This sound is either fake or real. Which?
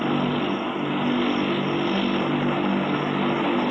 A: real